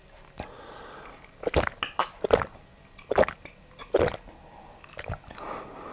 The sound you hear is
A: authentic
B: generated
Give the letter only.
A